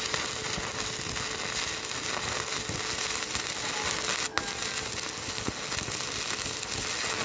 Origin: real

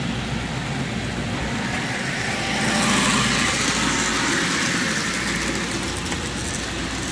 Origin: real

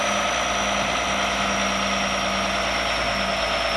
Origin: real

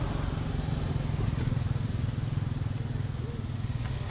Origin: real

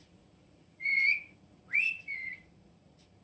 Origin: fake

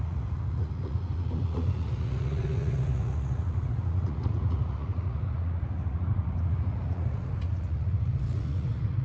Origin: fake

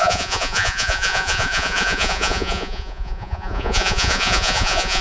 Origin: fake